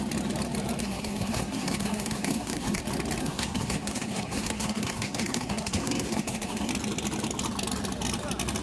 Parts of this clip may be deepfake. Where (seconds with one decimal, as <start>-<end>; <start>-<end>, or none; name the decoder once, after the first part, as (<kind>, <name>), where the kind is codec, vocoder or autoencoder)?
0.8-2.8 (codec, SNAC); 3.2-6.7